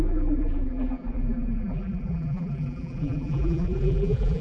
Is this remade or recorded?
remade